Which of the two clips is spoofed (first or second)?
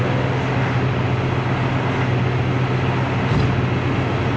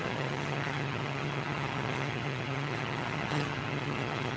second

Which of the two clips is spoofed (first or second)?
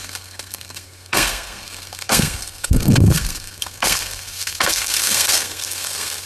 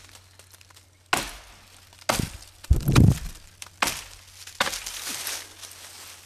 first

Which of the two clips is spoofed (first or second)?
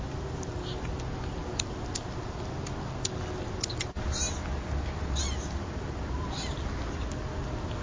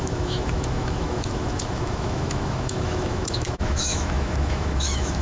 second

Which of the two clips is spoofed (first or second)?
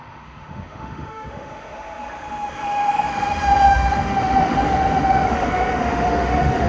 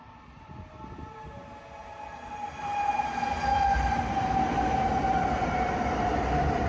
first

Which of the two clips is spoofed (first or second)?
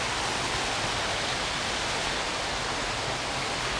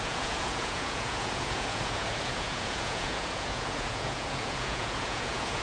second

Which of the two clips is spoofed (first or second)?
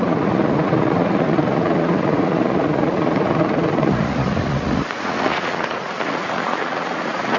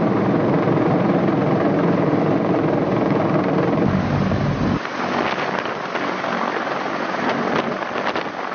first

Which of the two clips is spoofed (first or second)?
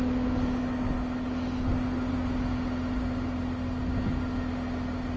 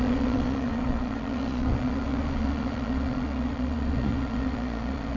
second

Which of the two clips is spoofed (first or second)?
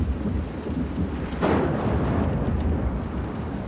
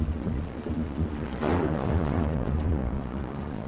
second